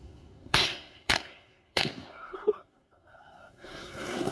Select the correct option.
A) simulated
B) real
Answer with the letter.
A